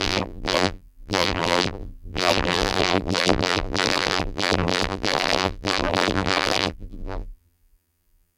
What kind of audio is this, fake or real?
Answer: fake